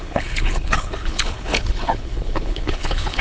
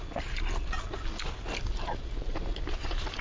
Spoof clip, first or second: first